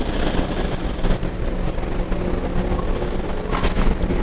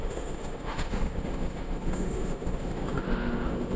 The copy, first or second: second